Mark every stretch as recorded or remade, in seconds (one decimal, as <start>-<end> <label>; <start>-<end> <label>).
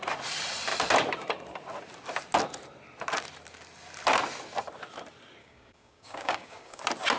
0.0-5.4 recorded; 5.4-6.8 remade; 6.8-7.2 recorded